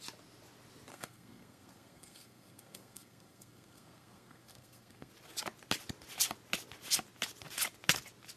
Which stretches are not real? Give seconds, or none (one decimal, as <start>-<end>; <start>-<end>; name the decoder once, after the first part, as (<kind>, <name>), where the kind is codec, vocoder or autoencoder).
0.9-5.1 (codec, SNAC)